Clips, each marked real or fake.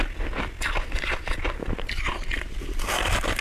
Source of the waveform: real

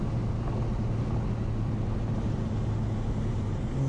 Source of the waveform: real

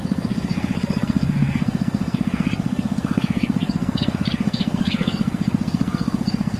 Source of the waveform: fake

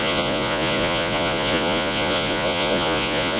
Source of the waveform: fake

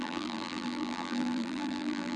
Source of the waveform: fake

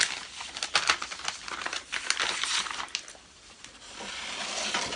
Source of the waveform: real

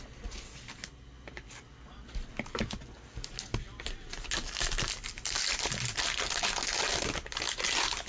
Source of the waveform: real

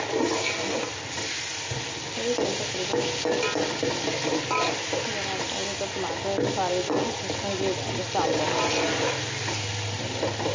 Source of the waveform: real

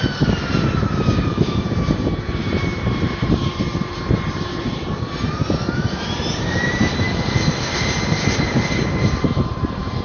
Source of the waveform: fake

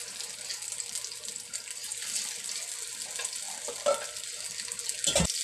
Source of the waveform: real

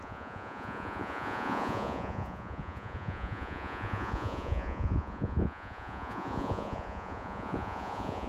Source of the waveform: fake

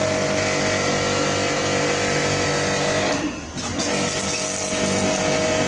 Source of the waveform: real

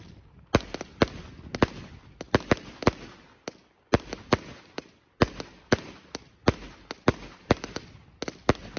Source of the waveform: real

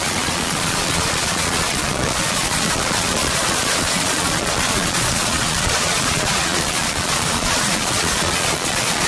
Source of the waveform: fake